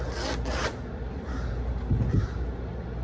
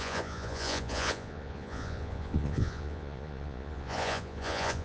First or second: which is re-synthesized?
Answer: second